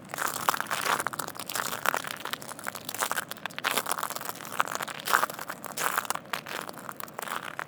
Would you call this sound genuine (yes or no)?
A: yes